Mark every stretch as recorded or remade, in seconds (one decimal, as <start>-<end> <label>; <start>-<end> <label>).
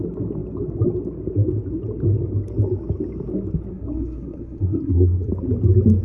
0.0-3.7 recorded; 3.7-5.3 remade; 5.3-6.0 recorded